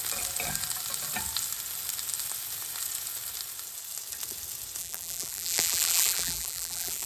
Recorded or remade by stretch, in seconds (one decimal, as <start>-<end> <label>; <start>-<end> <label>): 0.0-4.8 recorded; 4.8-7.1 remade